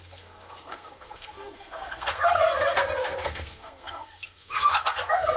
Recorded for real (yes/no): no